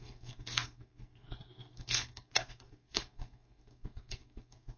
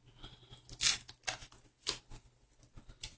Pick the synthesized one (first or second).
first